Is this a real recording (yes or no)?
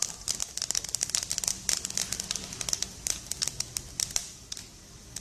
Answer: yes